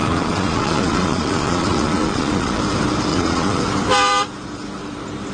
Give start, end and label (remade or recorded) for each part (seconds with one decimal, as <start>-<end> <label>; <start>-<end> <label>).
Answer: 0.0-2.6 remade; 2.6-3.1 recorded; 3.1-3.6 remade; 3.6-5.3 recorded

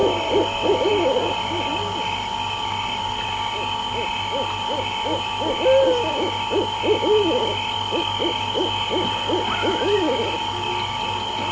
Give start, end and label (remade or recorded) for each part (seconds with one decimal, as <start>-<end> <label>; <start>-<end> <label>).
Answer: 0.0-11.5 recorded